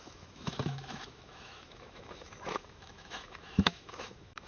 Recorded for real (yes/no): no